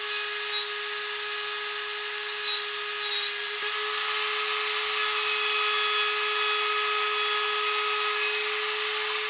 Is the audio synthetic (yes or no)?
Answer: no